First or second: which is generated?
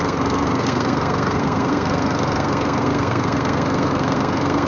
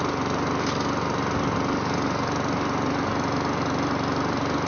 first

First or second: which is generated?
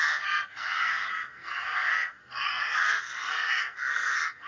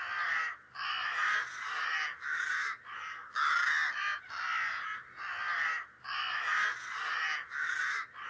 first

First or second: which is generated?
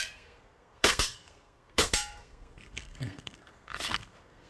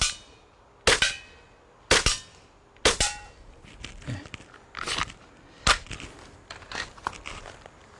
first